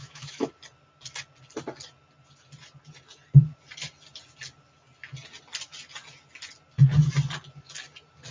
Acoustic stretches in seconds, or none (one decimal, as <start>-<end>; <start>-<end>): 0.5-8.3